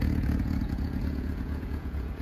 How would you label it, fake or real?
fake